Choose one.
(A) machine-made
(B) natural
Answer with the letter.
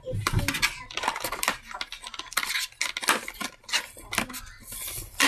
B